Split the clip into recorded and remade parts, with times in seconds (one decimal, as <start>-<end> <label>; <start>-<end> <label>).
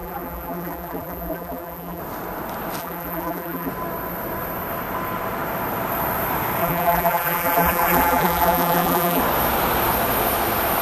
0.0-2.0 remade; 2.0-2.8 recorded; 2.8-3.7 remade; 3.7-6.6 recorded; 6.6-9.2 remade; 9.2-10.8 recorded